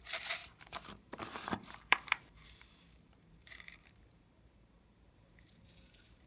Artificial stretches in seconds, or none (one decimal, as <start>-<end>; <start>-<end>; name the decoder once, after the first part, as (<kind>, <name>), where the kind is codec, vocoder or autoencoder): 0.0-6.3 (vocoder, BigVGAN v2)